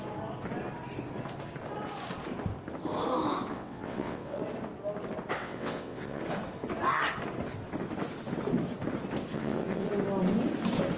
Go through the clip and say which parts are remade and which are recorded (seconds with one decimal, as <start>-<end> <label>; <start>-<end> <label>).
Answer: 0.0-3.5 recorded; 3.5-4.4 remade; 4.4-5.4 recorded; 5.4-6.2 remade; 6.2-9.3 recorded; 9.3-9.9 remade; 9.9-11.0 recorded